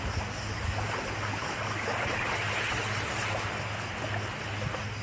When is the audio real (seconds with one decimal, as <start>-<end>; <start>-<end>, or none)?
0.0-5.0